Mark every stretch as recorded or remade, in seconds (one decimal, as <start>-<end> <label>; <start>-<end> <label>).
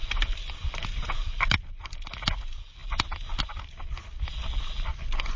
0.0-5.4 recorded